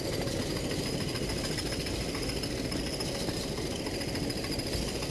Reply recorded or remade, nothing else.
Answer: recorded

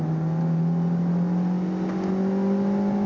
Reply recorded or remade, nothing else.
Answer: recorded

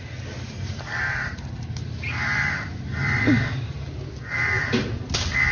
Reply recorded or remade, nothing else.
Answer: recorded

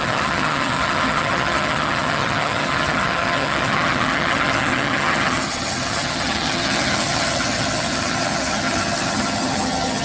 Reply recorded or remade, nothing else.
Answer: remade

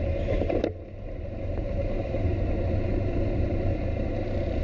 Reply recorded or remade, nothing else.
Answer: remade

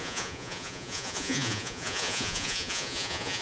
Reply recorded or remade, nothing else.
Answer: remade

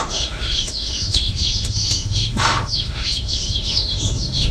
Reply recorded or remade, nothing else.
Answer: remade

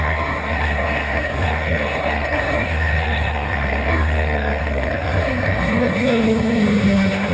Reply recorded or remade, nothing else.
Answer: remade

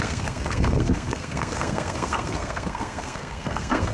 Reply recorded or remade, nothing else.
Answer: remade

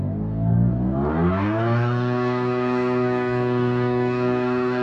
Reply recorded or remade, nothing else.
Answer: remade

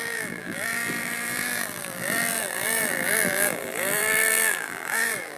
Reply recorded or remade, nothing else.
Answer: remade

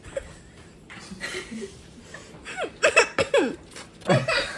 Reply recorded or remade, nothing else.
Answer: remade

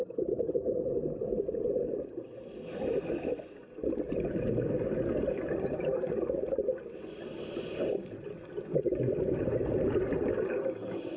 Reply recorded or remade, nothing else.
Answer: recorded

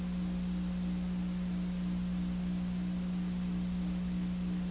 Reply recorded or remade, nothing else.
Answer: recorded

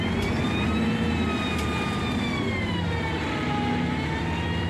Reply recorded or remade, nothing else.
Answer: recorded